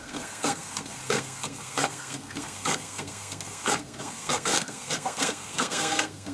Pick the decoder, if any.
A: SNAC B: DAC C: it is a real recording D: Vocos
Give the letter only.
A